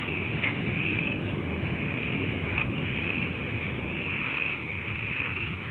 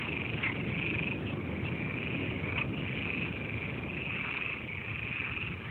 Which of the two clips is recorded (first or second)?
second